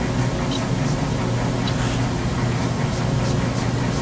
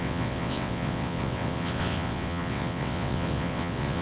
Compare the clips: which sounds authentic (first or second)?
first